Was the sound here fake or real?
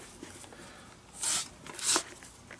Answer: real